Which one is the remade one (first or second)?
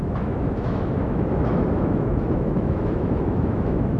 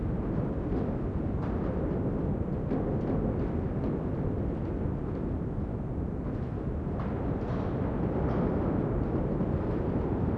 first